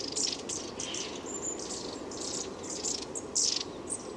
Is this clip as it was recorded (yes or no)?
yes